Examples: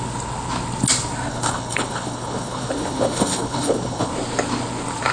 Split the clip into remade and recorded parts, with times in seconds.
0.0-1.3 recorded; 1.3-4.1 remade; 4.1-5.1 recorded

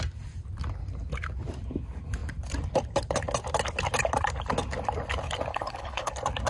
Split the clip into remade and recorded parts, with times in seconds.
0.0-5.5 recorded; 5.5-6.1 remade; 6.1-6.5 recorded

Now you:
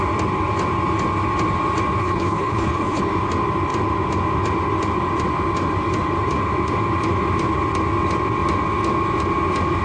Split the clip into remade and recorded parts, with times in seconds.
0.0-2.0 recorded; 2.0-3.0 remade; 3.0-9.8 recorded

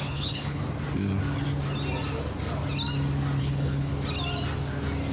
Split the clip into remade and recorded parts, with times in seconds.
0.0-0.6 remade; 0.6-3.4 recorded; 3.4-3.9 remade; 3.9-5.1 recorded

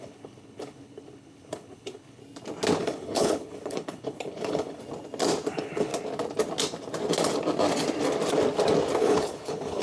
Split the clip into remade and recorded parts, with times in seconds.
0.0-2.2 remade; 2.2-2.8 recorded; 2.8-4.8 remade; 4.8-5.5 recorded; 5.5-5.9 remade; 5.9-9.0 recorded; 9.0-9.8 remade